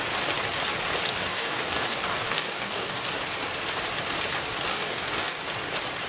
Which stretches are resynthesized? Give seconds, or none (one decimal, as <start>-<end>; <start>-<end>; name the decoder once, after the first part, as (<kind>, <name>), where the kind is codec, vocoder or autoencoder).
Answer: 1.2-3.0 (codec, DAC); 4.7-5.4